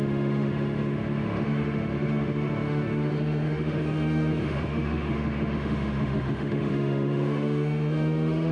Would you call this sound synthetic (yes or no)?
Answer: yes